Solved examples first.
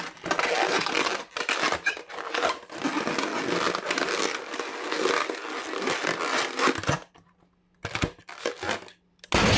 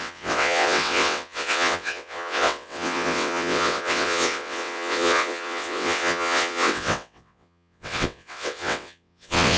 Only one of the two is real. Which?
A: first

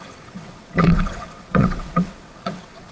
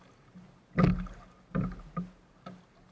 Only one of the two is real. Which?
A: second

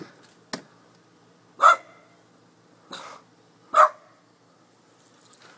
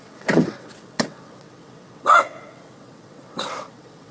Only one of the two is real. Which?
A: first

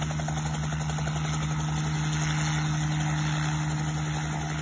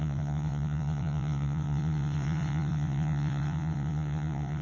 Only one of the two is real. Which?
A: first